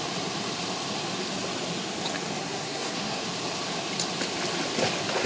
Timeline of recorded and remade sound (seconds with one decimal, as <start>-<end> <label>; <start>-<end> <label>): 0.0-2.4 recorded; 2.4-3.2 remade; 3.2-5.3 recorded